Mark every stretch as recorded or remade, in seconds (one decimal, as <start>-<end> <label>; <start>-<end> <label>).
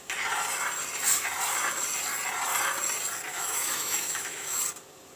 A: 0.0-3.3 recorded; 3.3-4.6 remade; 4.6-5.2 recorded